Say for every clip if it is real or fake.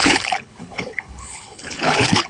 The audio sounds fake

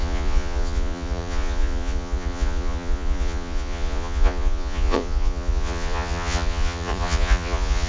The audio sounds fake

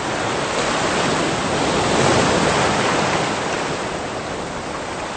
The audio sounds real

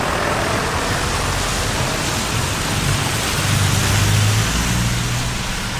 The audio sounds real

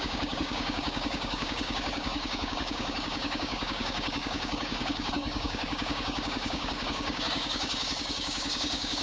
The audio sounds fake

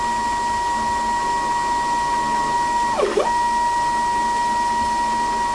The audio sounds real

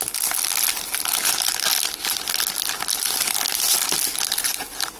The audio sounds real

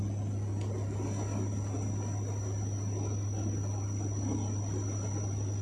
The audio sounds real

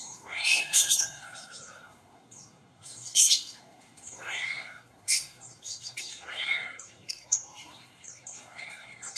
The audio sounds fake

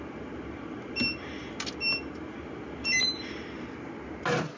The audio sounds real